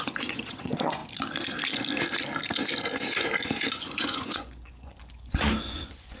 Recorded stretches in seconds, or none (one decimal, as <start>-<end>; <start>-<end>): 1.0-3.7